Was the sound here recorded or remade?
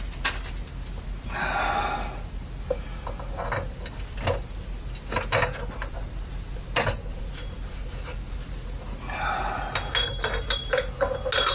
recorded